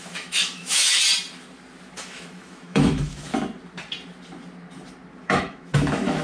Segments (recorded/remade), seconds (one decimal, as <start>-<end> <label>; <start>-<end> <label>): 0.0-1.0 remade; 1.0-2.0 recorded; 2.0-3.3 remade; 3.3-5.2 recorded; 5.2-6.2 remade